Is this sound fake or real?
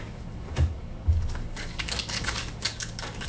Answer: fake